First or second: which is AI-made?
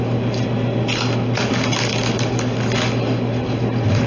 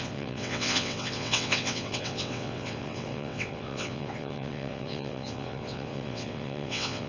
second